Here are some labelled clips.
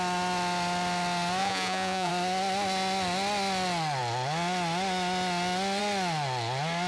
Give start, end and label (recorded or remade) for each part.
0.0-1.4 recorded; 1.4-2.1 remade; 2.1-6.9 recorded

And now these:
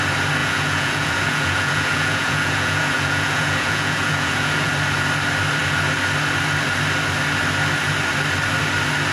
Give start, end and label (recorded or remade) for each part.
0.0-0.4 recorded; 0.4-4.7 remade; 4.7-9.1 recorded

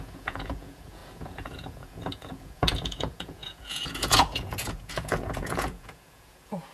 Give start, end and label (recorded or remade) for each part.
0.0-6.7 remade

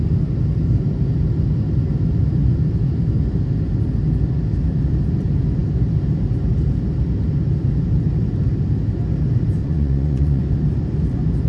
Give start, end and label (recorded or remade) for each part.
0.0-9.6 recorded; 9.6-10.4 remade; 10.4-11.5 recorded

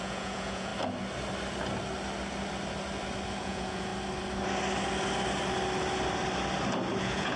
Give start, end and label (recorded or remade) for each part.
0.0-0.7 remade; 0.7-3.4 recorded; 3.4-3.9 remade; 3.9-7.0 recorded; 7.0-7.4 remade

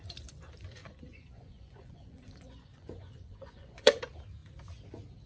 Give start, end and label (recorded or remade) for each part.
0.0-0.8 recorded; 0.8-4.0 remade; 4.0-5.3 recorded

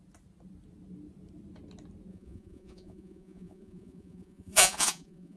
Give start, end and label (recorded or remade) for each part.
0.0-2.1 recorded; 2.1-5.4 remade

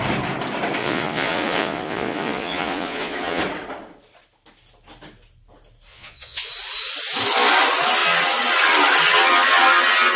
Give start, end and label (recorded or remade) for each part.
0.0-0.8 recorded; 0.8-3.4 remade; 3.4-5.9 recorded; 5.9-6.5 remade; 6.5-10.2 recorded